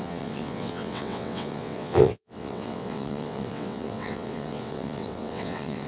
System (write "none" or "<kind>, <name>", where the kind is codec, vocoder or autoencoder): vocoder, WaveNeXt